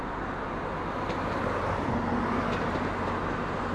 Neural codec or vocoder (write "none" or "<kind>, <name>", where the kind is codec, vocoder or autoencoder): none